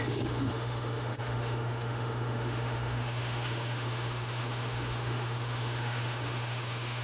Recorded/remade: remade